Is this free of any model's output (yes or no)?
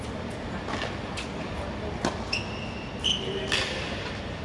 yes